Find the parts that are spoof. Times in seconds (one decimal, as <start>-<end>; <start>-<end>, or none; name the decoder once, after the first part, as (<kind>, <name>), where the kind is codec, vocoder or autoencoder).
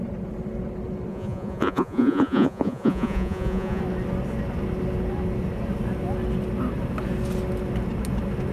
1.1-3.8 (vocoder, Vocos)